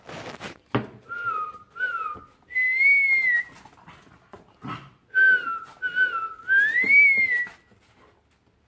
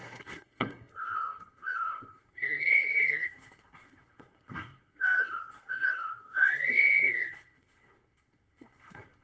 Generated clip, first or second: second